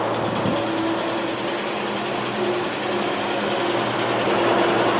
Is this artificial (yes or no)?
no